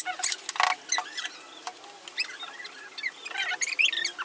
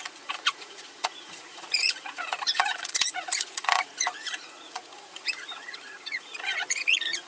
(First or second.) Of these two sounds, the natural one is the first